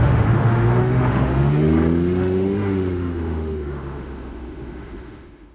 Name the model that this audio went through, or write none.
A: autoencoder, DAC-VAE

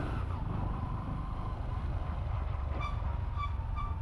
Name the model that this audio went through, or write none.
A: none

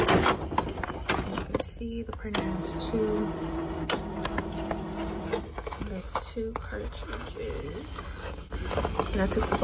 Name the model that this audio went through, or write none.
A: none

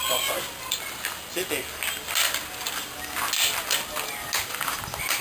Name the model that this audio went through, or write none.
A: none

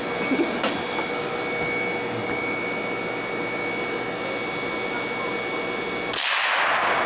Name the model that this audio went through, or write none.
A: none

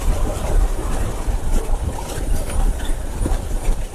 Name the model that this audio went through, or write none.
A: vocoder, BigVGAN v2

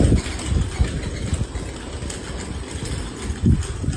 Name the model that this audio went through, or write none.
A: none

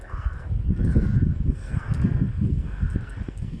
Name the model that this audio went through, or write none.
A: codec, SNAC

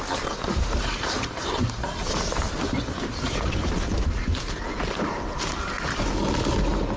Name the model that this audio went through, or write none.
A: none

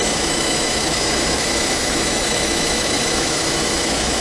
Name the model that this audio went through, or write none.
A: autoencoder, DAC-VAE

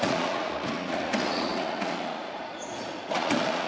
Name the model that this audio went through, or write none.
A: vocoder, Vocos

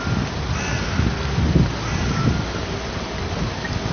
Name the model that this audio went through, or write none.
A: none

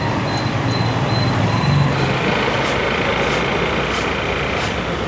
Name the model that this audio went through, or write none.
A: none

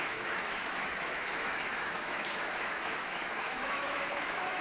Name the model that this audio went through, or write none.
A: autoencoder, DAC-VAE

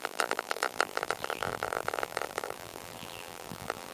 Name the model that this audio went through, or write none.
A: vocoder, BigVGAN v2